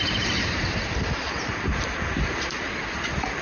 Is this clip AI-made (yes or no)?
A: no